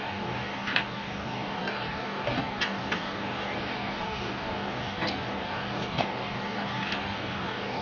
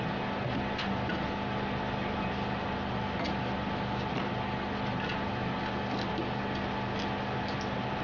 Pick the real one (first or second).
second